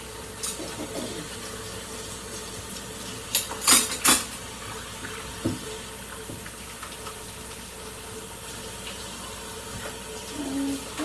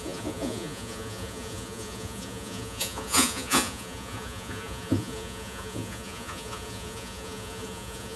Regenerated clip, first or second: second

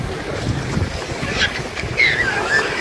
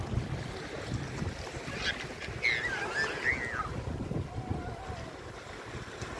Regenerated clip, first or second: first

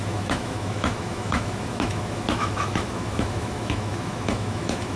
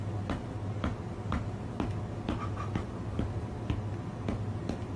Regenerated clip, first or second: first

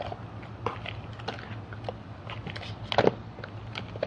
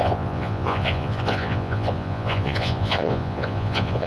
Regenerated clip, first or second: second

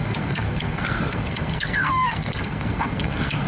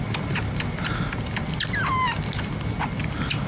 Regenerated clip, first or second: first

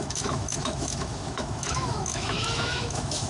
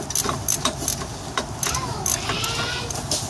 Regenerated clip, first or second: first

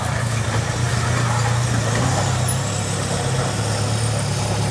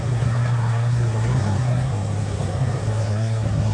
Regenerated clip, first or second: second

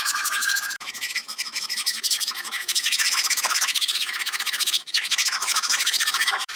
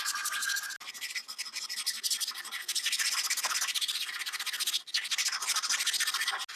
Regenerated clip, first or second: first